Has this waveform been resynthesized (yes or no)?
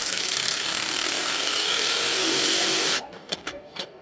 yes